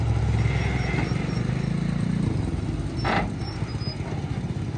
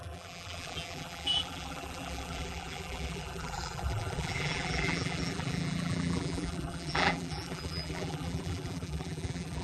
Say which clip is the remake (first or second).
second